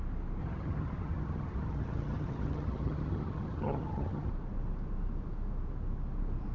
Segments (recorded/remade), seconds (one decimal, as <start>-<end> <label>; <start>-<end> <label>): 0.0-0.4 recorded; 0.4-4.3 remade; 4.3-6.5 recorded